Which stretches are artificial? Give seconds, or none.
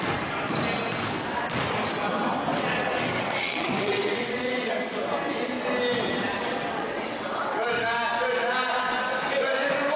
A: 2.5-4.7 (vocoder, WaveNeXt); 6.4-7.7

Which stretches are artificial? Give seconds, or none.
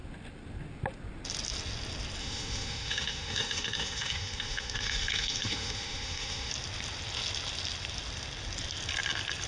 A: 2.2-6.5 (autoencoder, DAC-VAE)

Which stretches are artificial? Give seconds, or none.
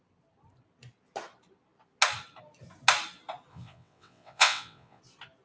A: 3.5-5.0 (vocoder, WaveNeXt)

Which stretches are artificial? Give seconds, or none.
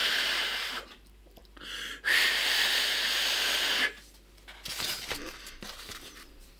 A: 0.0-1.4 (vocoder, BigVGAN v2); 5.4-6.6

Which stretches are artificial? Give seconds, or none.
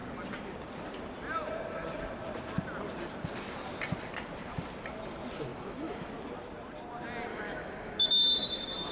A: 5.5-6.1 (autoencoder, DAC-VAE); 7.3-8.9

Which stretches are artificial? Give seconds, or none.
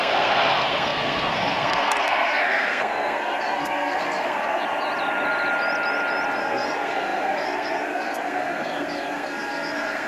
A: 0.0-4.6 (codec, SNAC); 6.4-10.1